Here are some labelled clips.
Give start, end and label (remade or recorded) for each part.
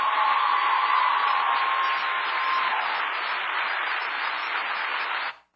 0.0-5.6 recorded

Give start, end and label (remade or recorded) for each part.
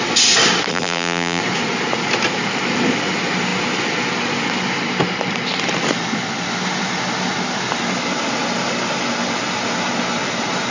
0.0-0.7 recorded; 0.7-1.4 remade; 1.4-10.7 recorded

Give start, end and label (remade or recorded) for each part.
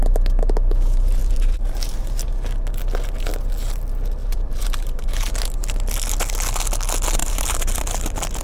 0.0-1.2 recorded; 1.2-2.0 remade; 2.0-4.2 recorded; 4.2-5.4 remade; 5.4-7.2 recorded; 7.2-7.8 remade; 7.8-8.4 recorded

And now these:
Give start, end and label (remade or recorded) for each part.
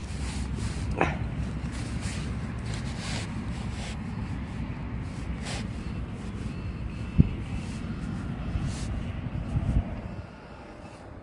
0.0-1.8 remade; 1.8-11.2 recorded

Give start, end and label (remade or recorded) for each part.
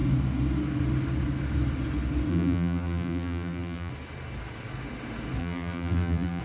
0.0-2.3 recorded; 2.3-3.9 remade; 3.9-5.4 recorded; 5.4-6.4 remade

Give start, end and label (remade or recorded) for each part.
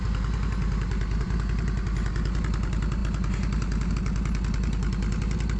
0.0-5.6 recorded